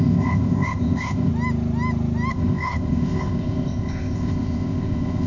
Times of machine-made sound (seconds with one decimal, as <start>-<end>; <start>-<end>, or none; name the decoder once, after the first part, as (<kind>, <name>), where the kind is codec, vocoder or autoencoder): 0.0-1.3 (codec, ZipCodec); 2.3-5.3